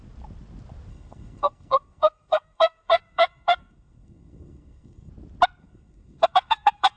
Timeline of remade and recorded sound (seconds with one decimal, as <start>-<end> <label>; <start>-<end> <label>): 0.0-0.9 recorded; 0.9-5.1 remade; 5.1-5.6 recorded; 5.6-7.0 remade